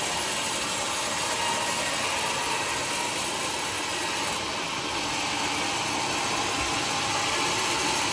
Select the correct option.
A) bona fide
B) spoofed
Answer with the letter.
A